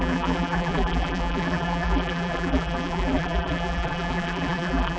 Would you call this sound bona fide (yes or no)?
no